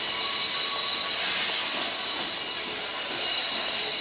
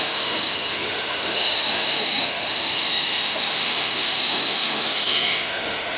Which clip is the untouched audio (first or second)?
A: first